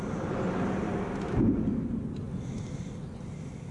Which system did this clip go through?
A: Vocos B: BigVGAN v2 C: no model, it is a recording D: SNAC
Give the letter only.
C